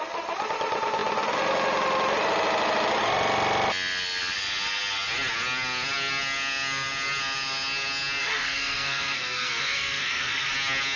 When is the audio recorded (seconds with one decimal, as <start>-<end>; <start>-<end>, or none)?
0.0-8.2; 10.5-11.0